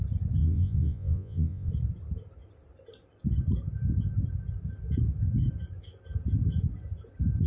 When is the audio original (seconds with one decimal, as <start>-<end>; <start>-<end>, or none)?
0.0-0.4; 1.7-7.5

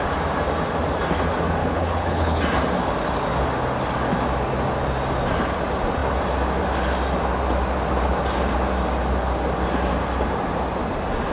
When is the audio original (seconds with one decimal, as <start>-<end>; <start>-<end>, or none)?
0.0-1.6; 2.4-11.3

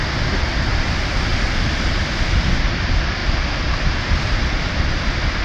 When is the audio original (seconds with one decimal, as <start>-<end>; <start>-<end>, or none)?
0.0-1.3; 2.1-3.2; 4.4-5.4